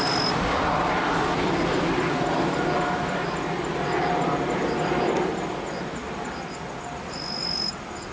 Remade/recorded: recorded